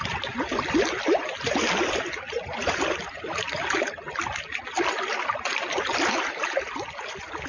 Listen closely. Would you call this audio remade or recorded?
recorded